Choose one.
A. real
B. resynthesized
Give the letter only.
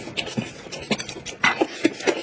A